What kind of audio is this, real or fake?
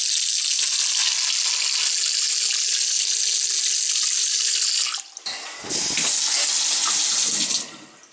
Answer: real